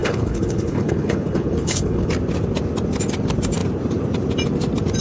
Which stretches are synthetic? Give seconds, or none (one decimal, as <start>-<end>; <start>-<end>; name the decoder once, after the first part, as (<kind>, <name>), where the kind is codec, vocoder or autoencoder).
0.0-2.1 (codec, HILCodec)